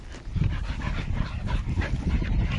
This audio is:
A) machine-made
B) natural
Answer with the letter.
B